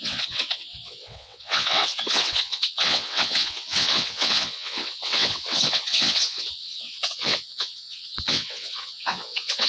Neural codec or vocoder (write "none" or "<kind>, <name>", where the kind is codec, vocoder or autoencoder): vocoder, WaveNeXt